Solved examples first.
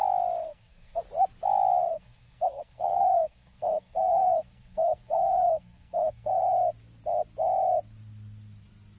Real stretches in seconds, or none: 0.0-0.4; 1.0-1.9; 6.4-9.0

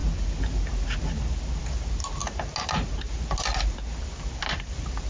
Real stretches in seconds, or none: 0.0-5.1

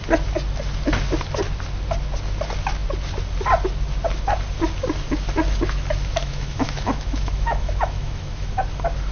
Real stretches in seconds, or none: 0.0-6.2; 8.6-9.1

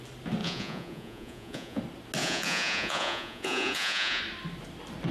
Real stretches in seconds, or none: 0.0-0.4; 1.8-2.2; 4.2-5.1

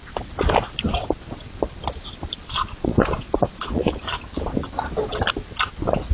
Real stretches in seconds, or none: 0.0-2.8; 4.0-6.1